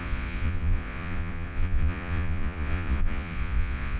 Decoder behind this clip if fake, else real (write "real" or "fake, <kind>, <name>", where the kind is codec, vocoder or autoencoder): fake, vocoder, Vocos